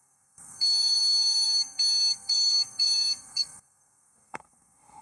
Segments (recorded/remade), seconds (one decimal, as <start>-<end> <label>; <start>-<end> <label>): 0.0-5.0 remade